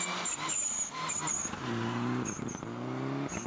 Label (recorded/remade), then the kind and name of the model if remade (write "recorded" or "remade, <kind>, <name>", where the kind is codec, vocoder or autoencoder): recorded